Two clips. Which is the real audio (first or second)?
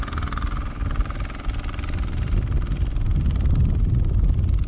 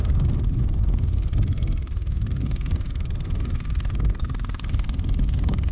first